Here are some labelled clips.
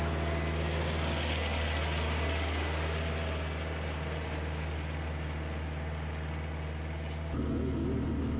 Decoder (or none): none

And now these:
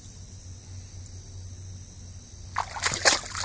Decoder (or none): none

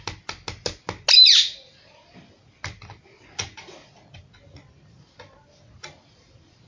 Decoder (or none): none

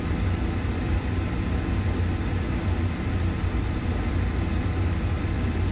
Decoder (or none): none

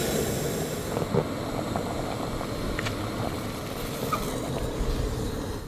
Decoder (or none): none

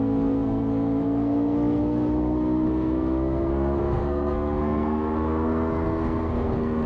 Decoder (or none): codec, SNAC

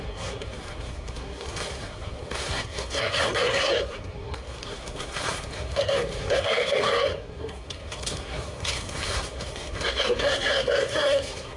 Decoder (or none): codec, SNAC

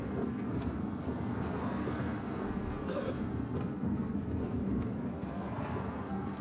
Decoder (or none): codec, SNAC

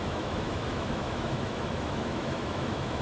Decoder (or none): autoencoder, DAC-VAE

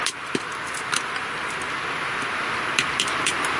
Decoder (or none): none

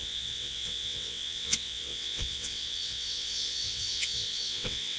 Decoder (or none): vocoder, WaveNeXt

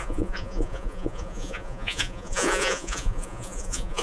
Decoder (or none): vocoder, Vocos